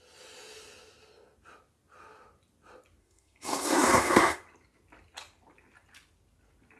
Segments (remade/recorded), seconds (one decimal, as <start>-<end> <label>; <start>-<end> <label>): 0.0-3.0 recorded; 3.0-4.4 remade; 4.4-6.8 recorded